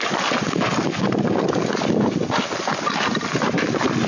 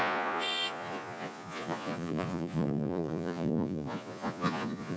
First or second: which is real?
first